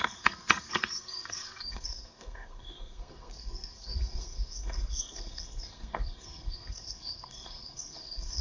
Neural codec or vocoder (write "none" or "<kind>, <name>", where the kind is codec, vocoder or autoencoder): codec, SNAC